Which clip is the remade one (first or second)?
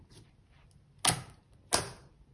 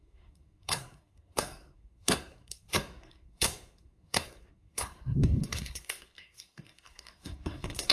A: second